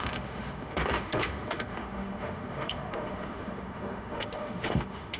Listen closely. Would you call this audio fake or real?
fake